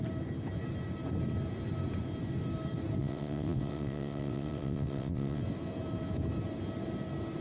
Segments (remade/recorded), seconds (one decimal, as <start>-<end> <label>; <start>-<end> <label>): 0.0-3.0 recorded; 3.0-5.4 remade; 5.4-7.4 recorded